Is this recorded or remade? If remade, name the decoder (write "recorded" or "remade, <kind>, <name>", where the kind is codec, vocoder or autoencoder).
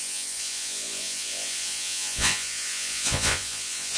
remade, vocoder, Vocos